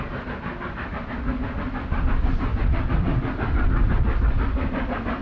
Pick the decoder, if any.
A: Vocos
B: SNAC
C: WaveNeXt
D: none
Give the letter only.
D